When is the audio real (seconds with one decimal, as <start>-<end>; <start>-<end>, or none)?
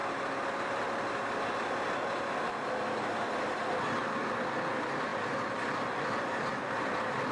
0.0-7.3